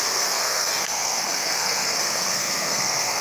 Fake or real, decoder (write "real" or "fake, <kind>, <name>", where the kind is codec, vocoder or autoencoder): fake, codec, SNAC